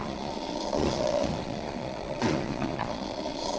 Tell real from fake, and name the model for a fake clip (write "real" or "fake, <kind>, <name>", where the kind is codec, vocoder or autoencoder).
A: fake, vocoder, Vocos